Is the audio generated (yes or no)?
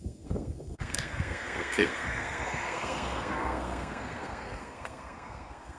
yes